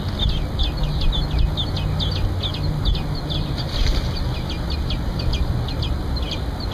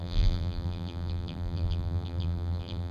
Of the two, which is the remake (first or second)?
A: second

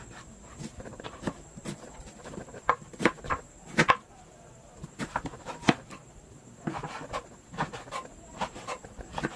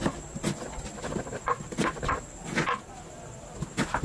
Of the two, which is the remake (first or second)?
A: first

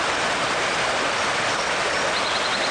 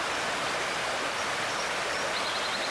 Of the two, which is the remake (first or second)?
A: first